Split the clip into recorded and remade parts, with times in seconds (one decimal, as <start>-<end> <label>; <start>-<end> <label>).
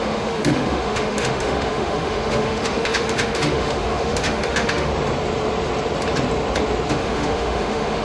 0.0-4.9 remade; 4.9-6.9 recorded; 6.9-8.0 remade